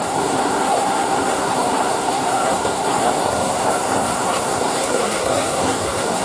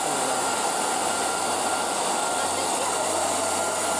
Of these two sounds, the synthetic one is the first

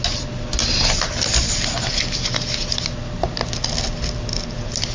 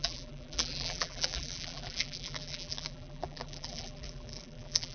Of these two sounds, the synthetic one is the second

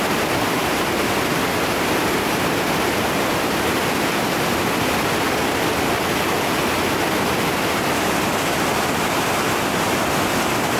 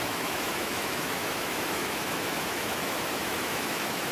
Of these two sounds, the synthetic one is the second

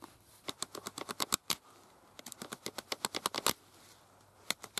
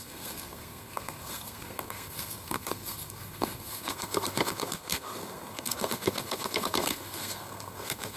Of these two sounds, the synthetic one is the second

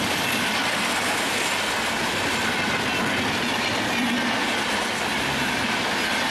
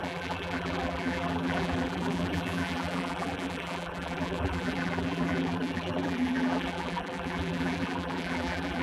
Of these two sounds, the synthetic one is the second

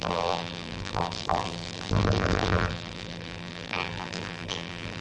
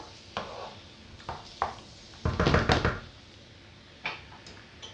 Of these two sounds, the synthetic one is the first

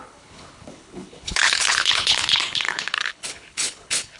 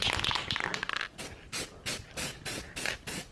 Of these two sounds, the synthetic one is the first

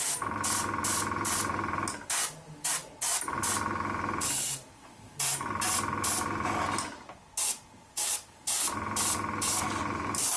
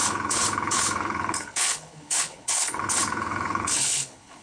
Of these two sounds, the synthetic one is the second